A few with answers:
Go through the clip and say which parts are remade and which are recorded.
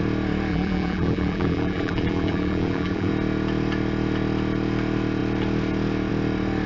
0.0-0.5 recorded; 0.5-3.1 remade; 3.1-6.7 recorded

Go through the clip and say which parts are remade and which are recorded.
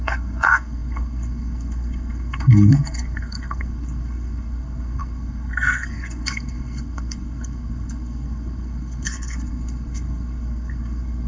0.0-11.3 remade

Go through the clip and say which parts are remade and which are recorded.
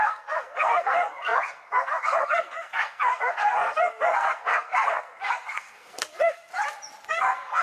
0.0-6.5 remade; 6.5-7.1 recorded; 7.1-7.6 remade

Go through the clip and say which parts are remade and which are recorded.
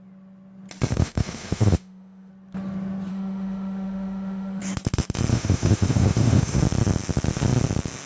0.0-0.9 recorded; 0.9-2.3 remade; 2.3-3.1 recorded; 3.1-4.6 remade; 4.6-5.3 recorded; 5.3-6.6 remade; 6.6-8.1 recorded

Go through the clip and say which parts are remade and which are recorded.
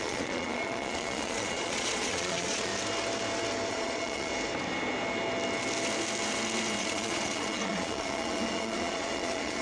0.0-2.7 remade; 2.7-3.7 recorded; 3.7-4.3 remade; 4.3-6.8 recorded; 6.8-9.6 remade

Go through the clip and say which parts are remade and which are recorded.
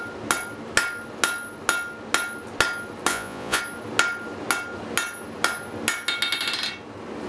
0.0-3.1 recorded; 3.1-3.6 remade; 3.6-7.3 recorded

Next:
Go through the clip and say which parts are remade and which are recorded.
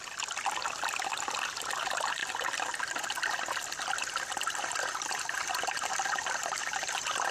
0.0-7.3 recorded